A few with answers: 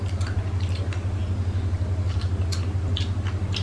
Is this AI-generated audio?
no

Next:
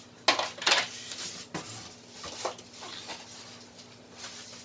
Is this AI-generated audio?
no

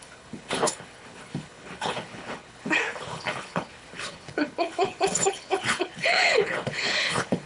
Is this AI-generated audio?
yes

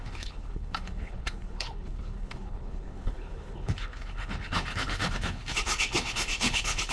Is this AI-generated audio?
yes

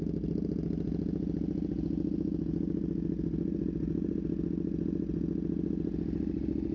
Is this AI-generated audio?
no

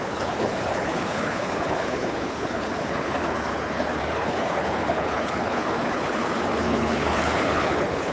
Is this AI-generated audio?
yes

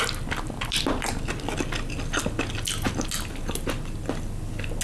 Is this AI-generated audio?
no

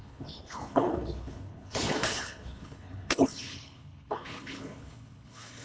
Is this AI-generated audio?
yes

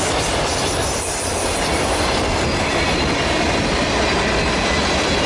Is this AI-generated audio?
no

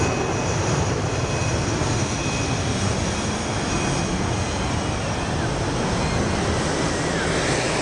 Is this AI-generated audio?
no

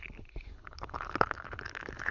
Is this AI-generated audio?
yes